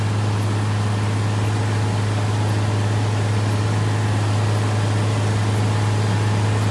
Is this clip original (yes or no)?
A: yes